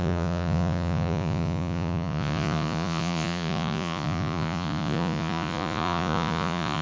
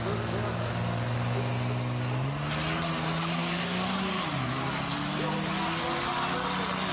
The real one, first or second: second